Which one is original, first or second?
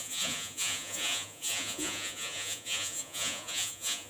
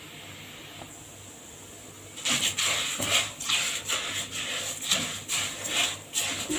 second